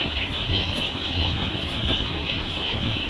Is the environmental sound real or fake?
fake